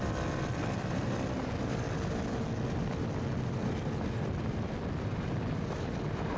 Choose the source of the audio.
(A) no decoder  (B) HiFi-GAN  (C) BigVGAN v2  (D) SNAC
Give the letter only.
A